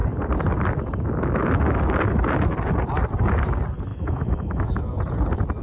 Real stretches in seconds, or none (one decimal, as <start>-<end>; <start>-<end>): 0.0-3.9; 5.0-5.6